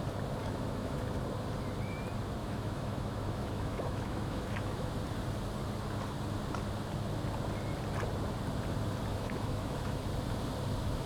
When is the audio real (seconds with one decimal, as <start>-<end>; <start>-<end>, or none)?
0.0-0.4; 1.0-2.4; 4.9-9.1; 10.0-11.1